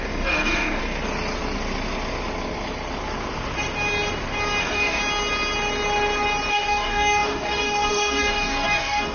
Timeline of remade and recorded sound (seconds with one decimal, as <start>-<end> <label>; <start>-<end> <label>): 0.0-0.8 remade; 0.8-4.6 recorded; 4.6-5.0 remade; 5.0-6.5 recorded; 6.5-9.1 remade